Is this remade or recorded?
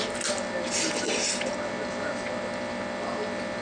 recorded